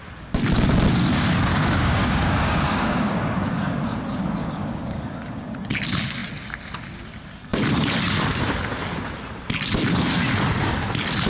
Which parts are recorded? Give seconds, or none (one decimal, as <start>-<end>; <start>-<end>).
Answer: 0.0-1.5; 3.8-4.4; 5.5-11.3